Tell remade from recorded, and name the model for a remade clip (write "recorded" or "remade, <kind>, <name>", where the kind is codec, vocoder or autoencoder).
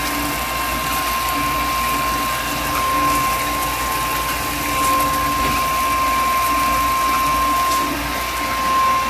recorded